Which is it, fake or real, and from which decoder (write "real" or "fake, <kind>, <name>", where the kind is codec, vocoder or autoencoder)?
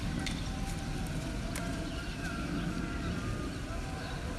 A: real